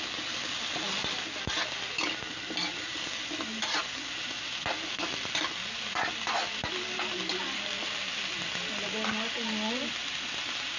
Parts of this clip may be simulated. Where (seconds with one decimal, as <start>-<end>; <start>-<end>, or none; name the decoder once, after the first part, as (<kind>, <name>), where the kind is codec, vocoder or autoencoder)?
none